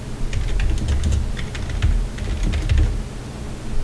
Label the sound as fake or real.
real